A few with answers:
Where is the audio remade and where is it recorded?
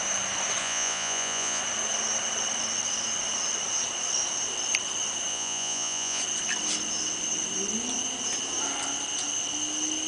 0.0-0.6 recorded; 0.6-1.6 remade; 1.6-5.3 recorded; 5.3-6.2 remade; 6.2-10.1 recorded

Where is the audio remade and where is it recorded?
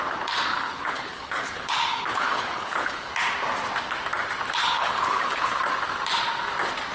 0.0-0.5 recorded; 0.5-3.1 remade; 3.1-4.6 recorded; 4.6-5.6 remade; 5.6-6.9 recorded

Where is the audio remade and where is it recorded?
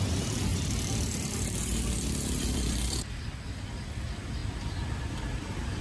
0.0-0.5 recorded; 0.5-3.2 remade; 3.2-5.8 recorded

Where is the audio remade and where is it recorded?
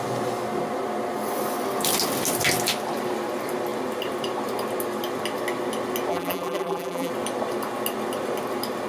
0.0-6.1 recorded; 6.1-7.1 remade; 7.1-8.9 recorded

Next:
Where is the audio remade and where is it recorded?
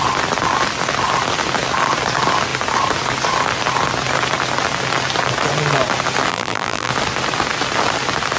0.0-6.3 recorded; 6.3-6.9 remade; 6.9-8.4 recorded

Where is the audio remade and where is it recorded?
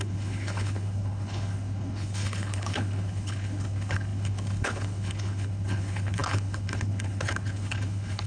0.0-8.3 remade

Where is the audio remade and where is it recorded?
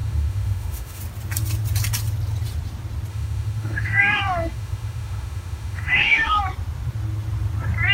0.0-1.0 remade; 1.0-3.1 recorded; 3.1-6.4 remade; 6.4-7.9 recorded